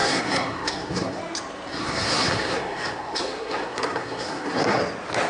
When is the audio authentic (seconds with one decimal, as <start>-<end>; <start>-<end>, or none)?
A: 1.2-1.7; 4.8-5.3